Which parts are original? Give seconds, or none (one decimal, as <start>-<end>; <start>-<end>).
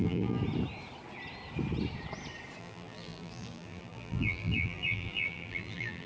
0.4-2.6